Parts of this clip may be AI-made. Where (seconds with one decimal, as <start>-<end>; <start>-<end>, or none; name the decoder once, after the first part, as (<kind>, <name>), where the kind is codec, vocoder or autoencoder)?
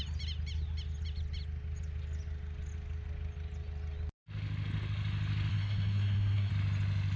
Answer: 5.5-6.5 (codec, SNAC)